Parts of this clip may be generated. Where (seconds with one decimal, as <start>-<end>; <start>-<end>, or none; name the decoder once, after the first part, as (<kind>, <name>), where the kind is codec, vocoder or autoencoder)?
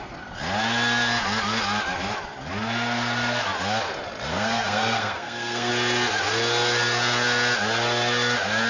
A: 4.3-5.7 (codec, SNAC)